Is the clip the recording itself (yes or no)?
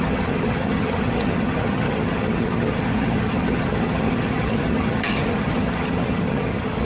no